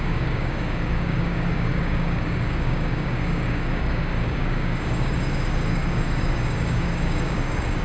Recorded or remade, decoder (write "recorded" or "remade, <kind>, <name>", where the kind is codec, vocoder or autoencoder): remade, codec, DAC